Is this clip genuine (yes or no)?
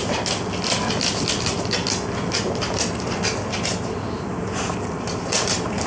yes